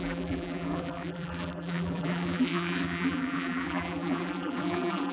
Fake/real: fake